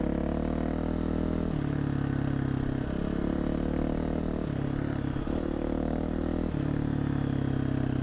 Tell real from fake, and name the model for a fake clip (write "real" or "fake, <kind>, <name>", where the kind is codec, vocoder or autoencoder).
real